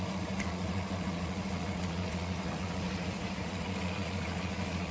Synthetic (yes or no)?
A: yes